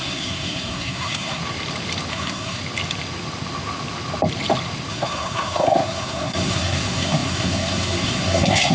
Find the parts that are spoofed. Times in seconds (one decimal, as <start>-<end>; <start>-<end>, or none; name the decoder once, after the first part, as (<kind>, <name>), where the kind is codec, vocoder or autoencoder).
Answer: 0.0-1.4 (codec, SNAC); 2.1-2.6; 4.9-8.7